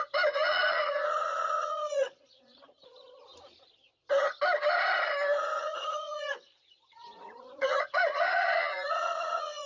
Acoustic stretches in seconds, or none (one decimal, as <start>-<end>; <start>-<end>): 3.3-5.6